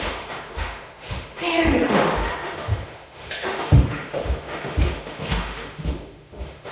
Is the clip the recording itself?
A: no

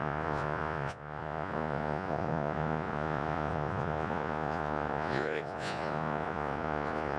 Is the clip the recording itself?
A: no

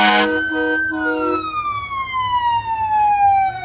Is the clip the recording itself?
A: yes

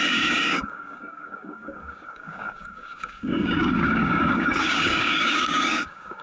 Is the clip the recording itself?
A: no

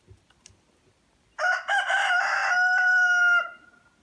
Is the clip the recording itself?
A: yes